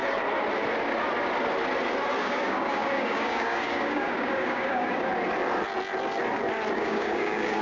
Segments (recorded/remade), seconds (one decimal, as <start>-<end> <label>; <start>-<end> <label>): 0.0-2.2 recorded; 2.2-5.1 remade; 5.1-6.7 recorded; 6.7-7.6 remade